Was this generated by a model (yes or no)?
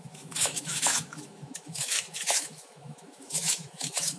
yes